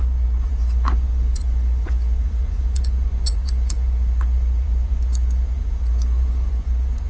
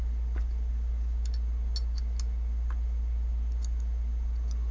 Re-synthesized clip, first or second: first